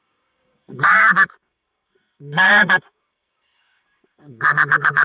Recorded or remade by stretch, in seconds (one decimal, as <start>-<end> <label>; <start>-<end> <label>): 0.0-5.0 remade